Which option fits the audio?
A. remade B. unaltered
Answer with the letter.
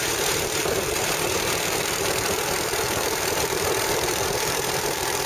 A